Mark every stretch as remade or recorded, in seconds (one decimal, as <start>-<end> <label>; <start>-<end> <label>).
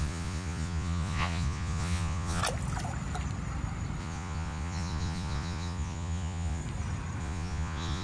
0.0-2.4 remade; 2.4-4.0 recorded; 4.0-6.6 remade; 6.6-7.2 recorded; 7.2-8.0 remade